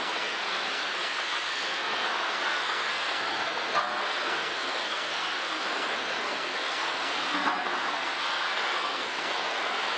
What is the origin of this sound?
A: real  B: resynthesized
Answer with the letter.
B